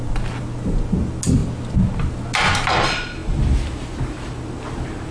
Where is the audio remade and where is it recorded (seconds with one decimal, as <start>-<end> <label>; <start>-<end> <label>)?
0.0-5.1 recorded